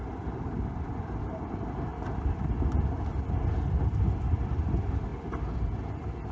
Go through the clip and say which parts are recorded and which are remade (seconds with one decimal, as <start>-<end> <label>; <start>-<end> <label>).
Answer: 0.0-1.2 remade; 1.2-6.3 recorded